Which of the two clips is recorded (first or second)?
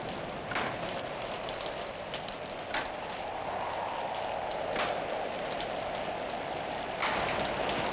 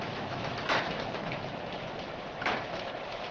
first